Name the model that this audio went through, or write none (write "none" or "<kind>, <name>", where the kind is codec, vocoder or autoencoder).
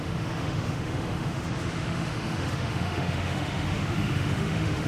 autoencoder, DAC-VAE